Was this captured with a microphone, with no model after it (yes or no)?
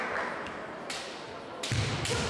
yes